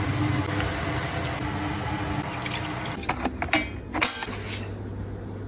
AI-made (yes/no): no